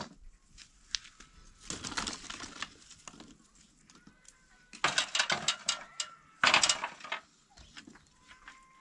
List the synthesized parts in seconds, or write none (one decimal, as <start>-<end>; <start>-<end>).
none